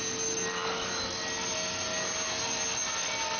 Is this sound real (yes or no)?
yes